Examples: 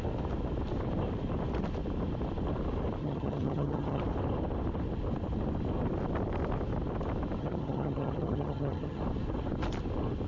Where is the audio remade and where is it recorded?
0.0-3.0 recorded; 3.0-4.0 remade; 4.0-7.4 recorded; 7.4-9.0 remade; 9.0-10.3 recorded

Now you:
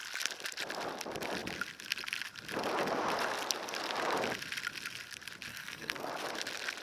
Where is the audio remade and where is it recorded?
0.0-5.5 recorded; 5.5-6.1 remade; 6.1-6.8 recorded

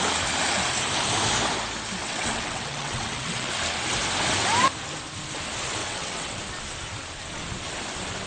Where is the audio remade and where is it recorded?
0.0-2.0 recorded; 2.0-3.5 remade; 3.5-5.8 recorded; 5.8-6.4 remade; 6.4-8.3 recorded

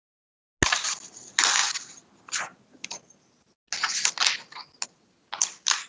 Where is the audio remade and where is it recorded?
0.0-5.9 recorded

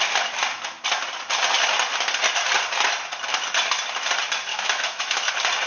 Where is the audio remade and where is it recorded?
0.0-4.5 recorded; 4.5-5.3 remade; 5.3-5.7 recorded

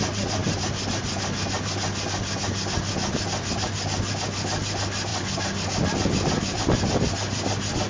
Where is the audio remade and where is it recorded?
0.0-7.9 recorded